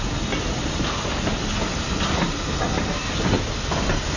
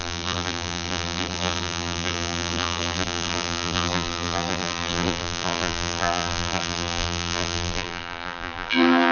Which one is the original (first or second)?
first